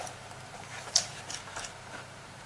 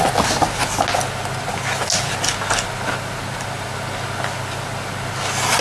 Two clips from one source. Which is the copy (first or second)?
first